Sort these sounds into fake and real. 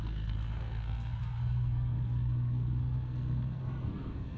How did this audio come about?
fake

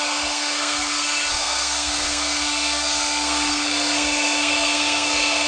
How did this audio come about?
fake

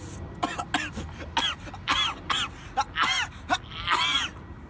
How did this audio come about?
real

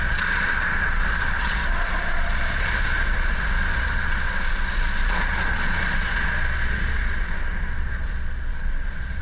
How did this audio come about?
fake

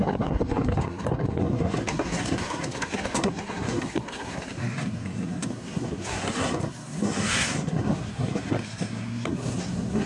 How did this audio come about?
fake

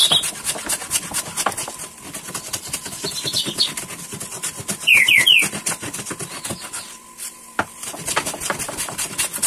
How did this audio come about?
real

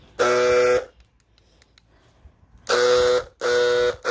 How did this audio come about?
real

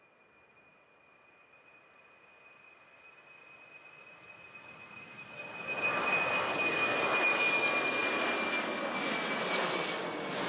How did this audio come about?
real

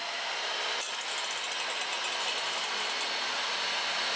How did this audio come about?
real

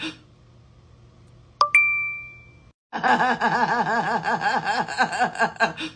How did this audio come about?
real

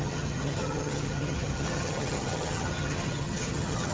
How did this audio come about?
fake